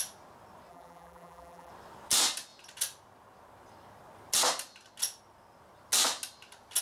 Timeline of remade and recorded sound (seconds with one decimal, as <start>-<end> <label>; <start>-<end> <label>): 0.0-0.7 recorded; 0.7-1.7 remade; 1.7-6.8 recorded

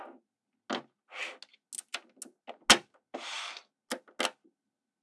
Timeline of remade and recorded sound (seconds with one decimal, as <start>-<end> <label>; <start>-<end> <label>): 0.0-5.0 recorded

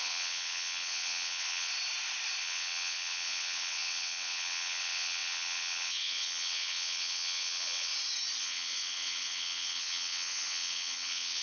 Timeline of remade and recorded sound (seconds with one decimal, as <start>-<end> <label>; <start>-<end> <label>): 0.0-1.7 remade; 1.7-2.4 recorded; 2.4-7.9 remade; 7.9-8.4 recorded; 8.4-11.4 remade